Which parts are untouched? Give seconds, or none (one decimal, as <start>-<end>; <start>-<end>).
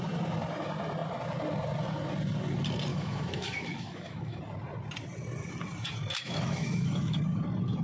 0.0-2.9; 4.4-6.2; 7.2-7.8